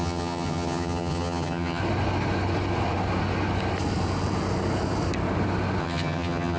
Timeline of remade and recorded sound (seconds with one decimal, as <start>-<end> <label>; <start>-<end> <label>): 0.0-1.8 remade; 1.8-5.8 recorded; 5.8-6.6 remade